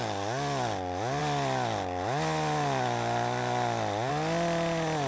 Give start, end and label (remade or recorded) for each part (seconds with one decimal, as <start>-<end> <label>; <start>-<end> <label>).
0.0-5.1 recorded